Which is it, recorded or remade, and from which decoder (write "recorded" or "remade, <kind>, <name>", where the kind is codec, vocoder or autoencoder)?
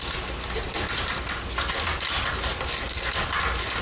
recorded